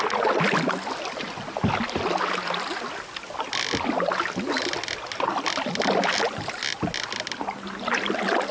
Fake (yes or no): no